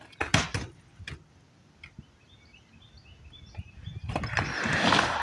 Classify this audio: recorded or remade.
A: recorded